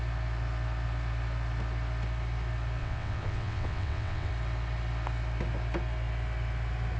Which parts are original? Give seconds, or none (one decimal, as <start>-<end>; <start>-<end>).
0.0-2.8; 4.3-7.0

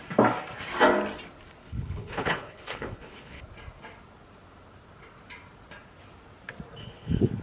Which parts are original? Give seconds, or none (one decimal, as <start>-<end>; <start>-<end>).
0.0-1.6; 3.4-6.8

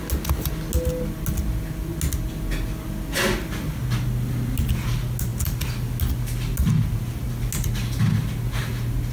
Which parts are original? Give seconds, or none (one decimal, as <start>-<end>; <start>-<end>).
0.0-9.1